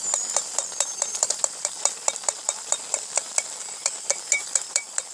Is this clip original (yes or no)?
no